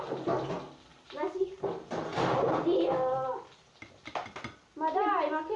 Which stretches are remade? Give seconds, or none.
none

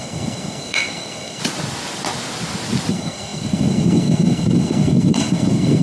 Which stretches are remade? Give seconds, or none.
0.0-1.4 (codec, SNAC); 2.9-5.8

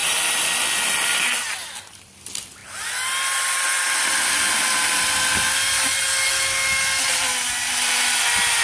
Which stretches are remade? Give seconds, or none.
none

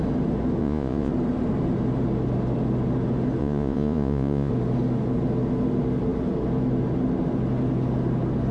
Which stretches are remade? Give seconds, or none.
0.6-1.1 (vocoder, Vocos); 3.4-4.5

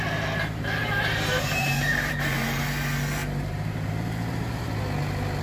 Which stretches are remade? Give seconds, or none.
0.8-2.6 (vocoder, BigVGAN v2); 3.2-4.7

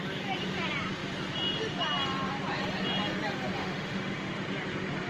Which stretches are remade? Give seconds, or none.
3.6-4.4 (autoencoder, DAC-VAE)